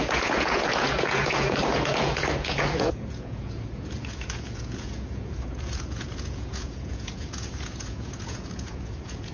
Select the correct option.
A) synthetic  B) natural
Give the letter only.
A